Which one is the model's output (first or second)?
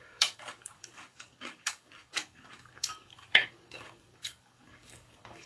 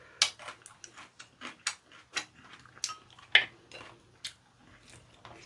first